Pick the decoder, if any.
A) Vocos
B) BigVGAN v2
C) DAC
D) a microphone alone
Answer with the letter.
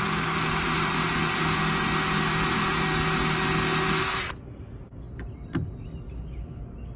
D